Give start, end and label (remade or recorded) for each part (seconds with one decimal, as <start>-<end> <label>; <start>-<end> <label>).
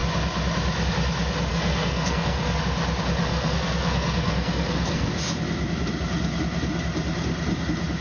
0.0-1.5 recorded; 1.5-2.6 remade; 2.6-3.3 recorded; 3.3-5.1 remade; 5.1-8.0 recorded